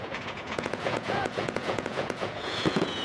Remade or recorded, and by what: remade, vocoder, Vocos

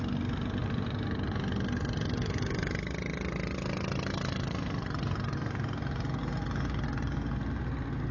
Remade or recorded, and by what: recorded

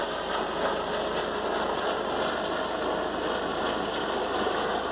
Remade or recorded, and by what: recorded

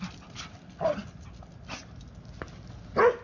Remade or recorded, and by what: recorded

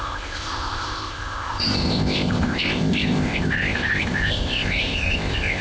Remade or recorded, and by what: remade, codec, ZipCodec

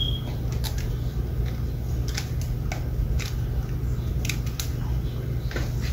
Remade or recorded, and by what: recorded